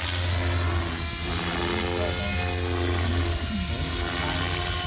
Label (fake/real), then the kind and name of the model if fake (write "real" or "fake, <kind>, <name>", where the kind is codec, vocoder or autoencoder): real